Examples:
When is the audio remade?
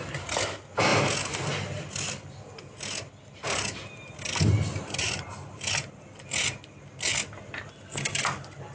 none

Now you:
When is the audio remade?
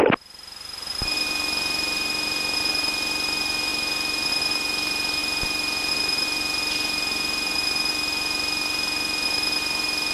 none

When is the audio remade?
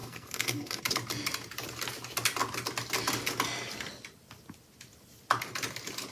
0.0-0.8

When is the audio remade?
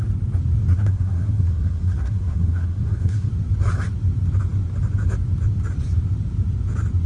0.7-3.3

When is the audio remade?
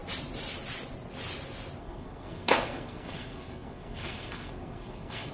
1.8-5.3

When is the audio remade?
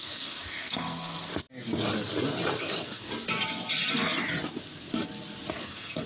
0.0-1.3; 2.6-3.1; 5.5-6.1